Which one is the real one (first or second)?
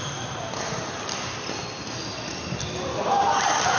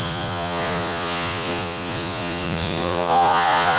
first